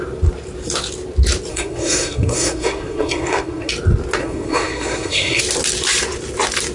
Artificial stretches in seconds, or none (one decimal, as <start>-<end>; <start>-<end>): 1.5-3.7; 4.2-5.4